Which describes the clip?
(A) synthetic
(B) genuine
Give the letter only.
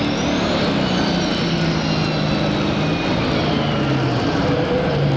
B